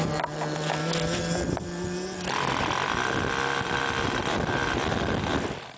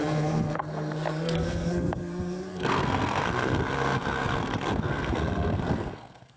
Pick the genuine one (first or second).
first